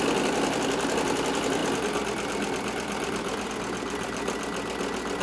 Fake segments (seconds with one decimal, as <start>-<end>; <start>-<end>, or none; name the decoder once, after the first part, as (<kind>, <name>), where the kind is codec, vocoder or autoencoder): 1.6-3.5 (vocoder, BigVGAN v2)